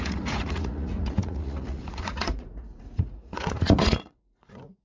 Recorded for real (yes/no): no